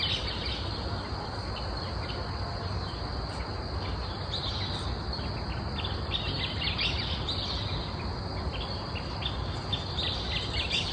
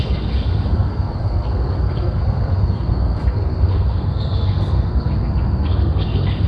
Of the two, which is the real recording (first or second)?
first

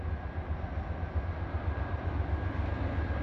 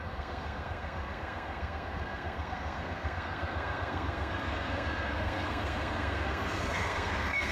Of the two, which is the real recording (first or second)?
first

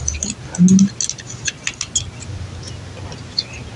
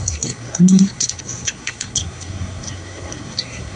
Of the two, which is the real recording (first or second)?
first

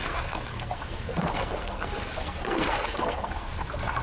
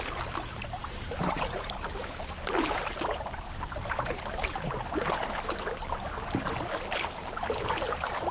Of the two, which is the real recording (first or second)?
second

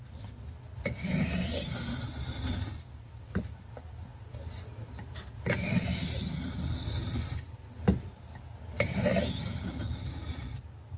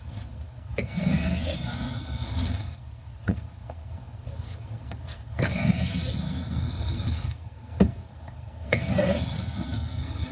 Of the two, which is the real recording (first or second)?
first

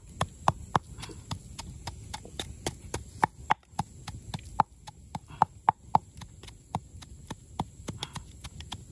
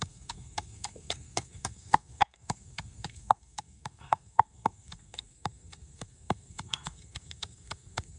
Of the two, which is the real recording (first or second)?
first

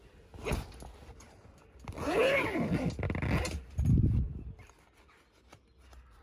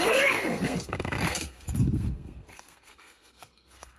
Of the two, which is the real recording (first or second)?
first